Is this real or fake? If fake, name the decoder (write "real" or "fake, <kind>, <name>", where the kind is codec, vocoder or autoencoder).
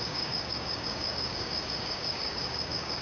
fake, codec, DAC